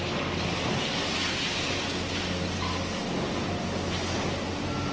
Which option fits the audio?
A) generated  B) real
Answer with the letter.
B